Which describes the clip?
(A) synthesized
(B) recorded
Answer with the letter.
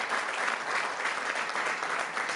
B